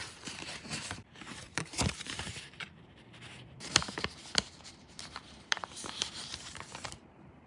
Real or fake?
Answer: fake